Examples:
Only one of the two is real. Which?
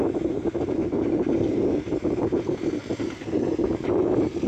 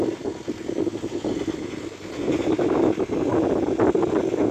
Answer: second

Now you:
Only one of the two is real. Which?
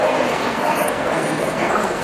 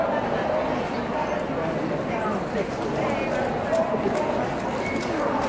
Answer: second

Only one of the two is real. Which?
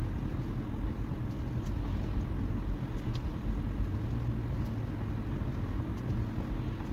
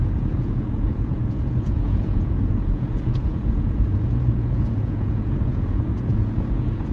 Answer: first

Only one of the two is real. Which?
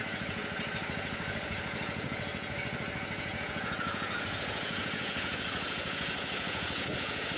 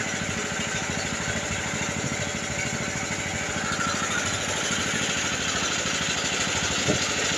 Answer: second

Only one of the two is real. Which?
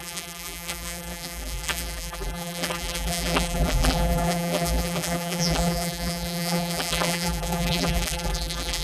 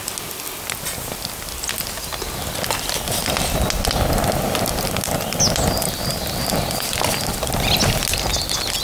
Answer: second